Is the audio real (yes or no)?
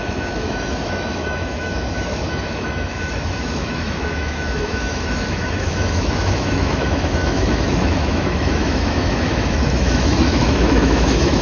no